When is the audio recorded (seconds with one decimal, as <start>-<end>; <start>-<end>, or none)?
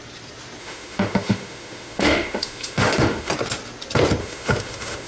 0.0-0.6; 3.3-4.2